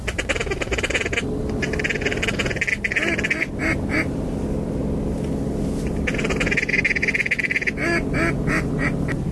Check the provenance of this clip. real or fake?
real